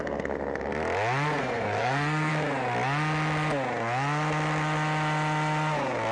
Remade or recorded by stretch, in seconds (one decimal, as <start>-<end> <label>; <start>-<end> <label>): 0.0-0.7 remade; 0.7-1.4 recorded; 1.4-2.3 remade; 2.3-6.1 recorded